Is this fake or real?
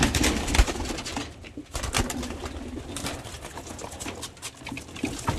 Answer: real